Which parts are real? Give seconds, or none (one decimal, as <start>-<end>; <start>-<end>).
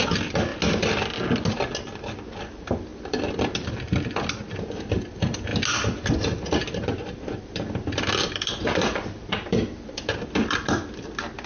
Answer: 0.5-2.4; 5.5-6.1